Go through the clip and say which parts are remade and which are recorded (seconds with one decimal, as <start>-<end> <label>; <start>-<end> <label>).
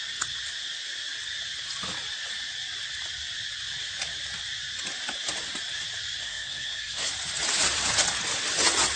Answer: 0.0-6.2 recorded; 6.2-7.1 remade; 7.1-9.0 recorded